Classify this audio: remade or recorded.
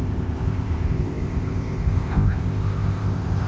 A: remade